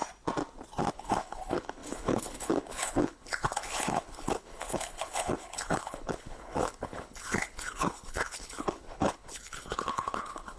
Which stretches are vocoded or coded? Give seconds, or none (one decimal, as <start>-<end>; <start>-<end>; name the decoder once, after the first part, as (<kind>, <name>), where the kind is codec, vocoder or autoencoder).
0.9-10.6 (codec, HILCodec)